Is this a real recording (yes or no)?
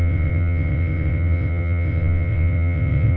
no